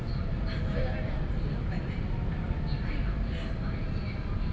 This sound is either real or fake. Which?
real